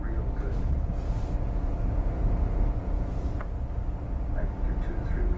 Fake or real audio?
real